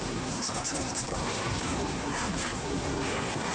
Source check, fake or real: fake